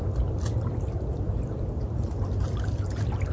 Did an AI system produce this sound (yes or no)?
no